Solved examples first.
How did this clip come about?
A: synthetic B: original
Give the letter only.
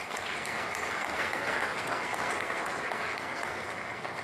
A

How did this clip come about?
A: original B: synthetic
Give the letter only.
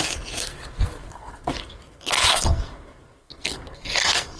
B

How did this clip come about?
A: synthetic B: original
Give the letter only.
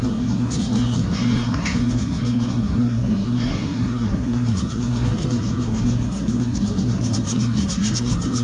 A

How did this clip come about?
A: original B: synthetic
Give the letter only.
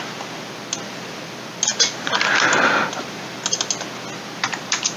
A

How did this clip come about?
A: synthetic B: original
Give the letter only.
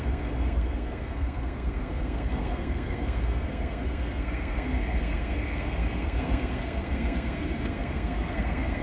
A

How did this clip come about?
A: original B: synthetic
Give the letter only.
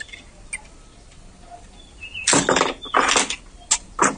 A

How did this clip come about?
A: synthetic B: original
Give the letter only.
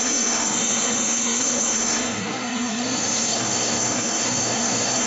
A